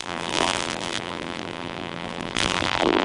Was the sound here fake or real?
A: fake